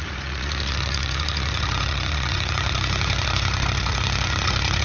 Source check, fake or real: fake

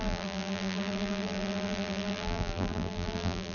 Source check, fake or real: fake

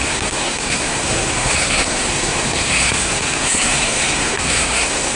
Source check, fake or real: fake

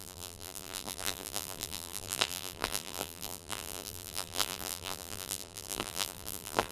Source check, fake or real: fake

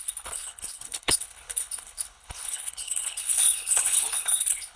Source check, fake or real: fake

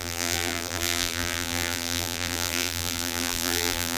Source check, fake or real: fake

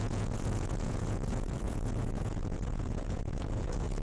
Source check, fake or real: fake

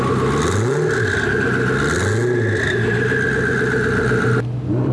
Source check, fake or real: real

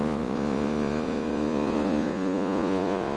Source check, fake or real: fake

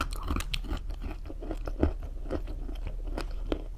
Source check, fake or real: real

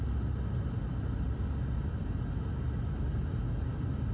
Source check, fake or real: real